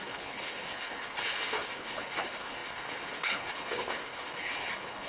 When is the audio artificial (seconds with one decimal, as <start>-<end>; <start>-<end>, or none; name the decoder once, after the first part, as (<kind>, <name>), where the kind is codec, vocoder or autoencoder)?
0.0-5.1 (codec, HILCodec)